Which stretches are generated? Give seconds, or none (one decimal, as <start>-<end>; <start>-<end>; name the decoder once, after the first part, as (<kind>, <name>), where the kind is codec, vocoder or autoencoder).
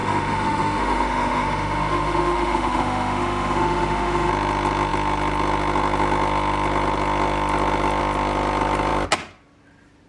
0.0-4.3 (autoencoder, DAC-VAE)